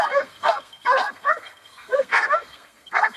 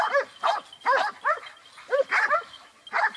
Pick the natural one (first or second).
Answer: second